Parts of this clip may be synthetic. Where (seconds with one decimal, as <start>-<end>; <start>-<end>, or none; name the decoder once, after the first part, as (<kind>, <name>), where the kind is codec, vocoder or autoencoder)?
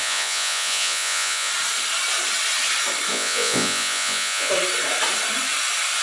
0.0-1.5 (vocoder, Vocos); 3.1-4.5